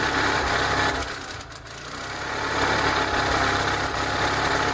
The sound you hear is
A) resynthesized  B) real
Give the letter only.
B